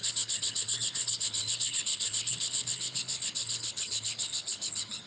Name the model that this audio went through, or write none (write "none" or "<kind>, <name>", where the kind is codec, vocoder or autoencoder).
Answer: codec, HILCodec